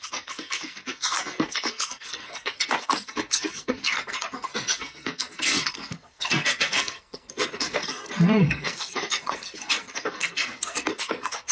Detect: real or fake fake